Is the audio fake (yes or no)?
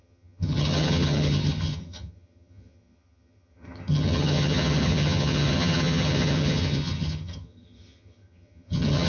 yes